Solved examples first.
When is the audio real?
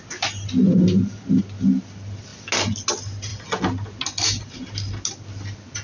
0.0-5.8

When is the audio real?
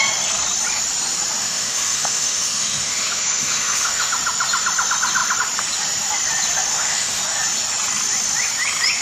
0.0-1.4; 4.1-6.7; 7.2-9.0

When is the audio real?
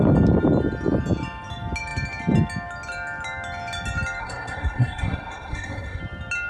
0.0-4.2; 6.0-6.5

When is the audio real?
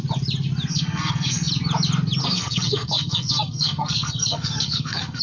0.0-0.7; 1.5-2.2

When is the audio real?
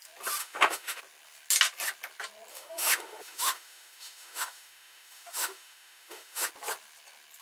0.0-0.4; 1.0-2.5; 6.5-7.4